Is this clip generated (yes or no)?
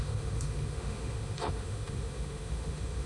yes